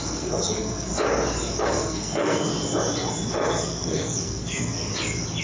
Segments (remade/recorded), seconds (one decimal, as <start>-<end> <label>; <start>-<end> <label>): 0.0-0.9 remade; 0.9-1.6 recorded; 1.6-2.5 remade; 2.5-3.3 recorded; 3.3-4.9 remade; 4.9-5.4 recorded